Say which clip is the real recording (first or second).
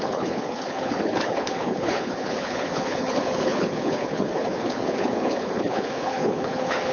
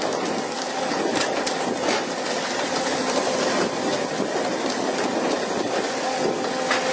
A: second